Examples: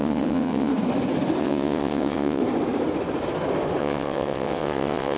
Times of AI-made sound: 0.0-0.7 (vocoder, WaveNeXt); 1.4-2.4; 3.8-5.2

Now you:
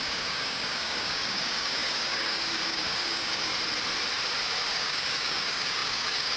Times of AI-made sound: 0.0-3.5 (codec, DAC); 4.7-6.4